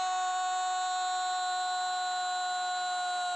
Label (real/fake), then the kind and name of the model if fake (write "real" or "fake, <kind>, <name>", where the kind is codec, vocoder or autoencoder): real